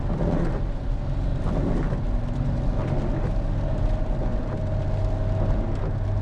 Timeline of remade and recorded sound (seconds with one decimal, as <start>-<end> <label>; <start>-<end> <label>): 0.0-6.2 recorded